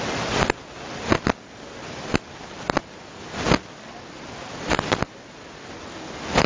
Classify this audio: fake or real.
real